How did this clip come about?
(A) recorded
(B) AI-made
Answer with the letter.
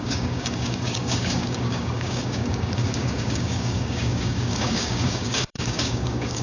B